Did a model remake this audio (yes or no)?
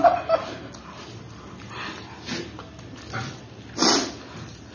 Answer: no